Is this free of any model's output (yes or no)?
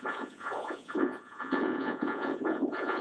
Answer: no